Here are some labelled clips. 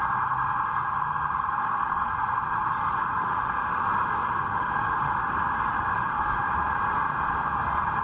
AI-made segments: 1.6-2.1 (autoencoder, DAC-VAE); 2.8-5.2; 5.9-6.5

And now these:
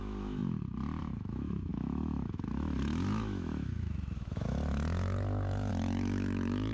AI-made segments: 0.0-0.4 (autoencoder, DAC-VAE); 1.0-6.7

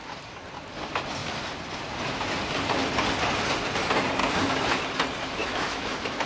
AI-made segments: 4.2-4.8 (autoencoder, DAC-VAE); 5.4-6.3